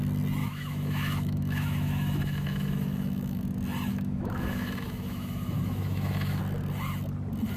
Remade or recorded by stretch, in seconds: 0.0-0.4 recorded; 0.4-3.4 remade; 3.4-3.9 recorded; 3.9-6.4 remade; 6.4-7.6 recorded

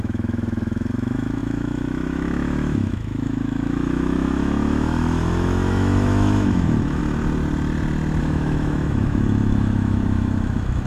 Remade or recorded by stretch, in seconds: 0.0-7.0 remade; 7.0-8.2 recorded; 8.2-10.9 remade

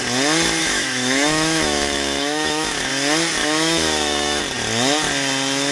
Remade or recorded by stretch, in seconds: 0.0-0.6 recorded; 0.6-2.9 remade; 2.9-3.4 recorded; 3.4-4.4 remade; 4.4-5.7 recorded